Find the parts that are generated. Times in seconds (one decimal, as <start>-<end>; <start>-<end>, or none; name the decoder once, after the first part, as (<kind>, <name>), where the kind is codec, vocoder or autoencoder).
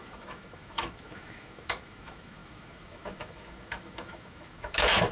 0.0-5.1 (autoencoder, DAC-VAE)